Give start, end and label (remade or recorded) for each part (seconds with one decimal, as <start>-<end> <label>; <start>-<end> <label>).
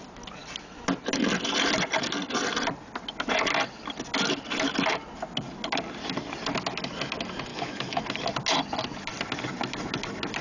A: 0.0-7.5 recorded; 7.5-8.0 remade; 8.0-10.4 recorded